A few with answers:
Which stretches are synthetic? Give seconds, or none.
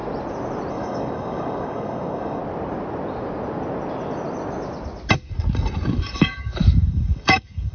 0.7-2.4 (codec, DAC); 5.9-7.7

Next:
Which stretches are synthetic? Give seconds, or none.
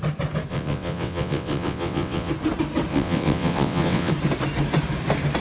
0.5-2.3 (vocoder, WaveNeXt); 2.9-4.1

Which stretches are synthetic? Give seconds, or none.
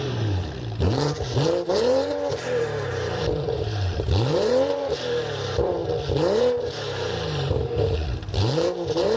0.0-5.8 (vocoder, BigVGAN v2); 6.4-9.2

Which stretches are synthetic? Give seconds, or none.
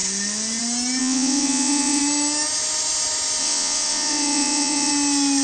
1.0-2.0 (vocoder, WaveNeXt); 3.4-4.9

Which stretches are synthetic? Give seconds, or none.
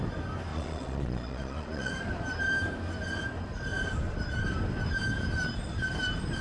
0.5-1.9 (vocoder, Vocos)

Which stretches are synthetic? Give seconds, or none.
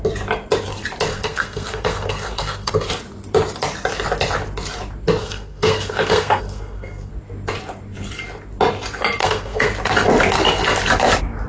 1.1-2.9 (codec, SNAC); 5.2-7.1; 9.2-9.7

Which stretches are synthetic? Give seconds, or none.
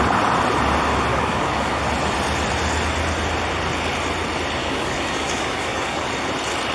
1.1-1.8 (codec, DAC); 4.6-6.1